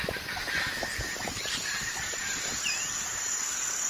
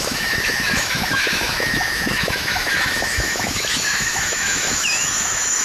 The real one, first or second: first